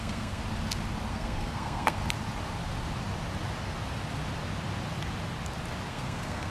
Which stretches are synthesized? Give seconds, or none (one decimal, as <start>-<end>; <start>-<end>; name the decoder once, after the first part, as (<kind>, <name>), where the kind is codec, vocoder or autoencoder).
0.0-0.4 (codec, SNAC); 1.1-2.0; 5.9-6.5

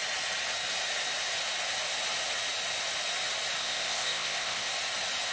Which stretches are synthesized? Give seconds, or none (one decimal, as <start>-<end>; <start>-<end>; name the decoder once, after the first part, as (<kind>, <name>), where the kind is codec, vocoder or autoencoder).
3.6-4.7 (codec, ZipCodec)

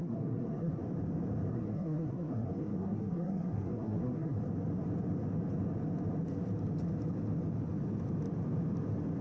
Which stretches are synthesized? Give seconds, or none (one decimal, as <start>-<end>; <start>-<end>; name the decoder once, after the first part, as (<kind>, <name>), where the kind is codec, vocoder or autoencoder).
0.0-0.8 (codec, SNAC); 1.5-4.4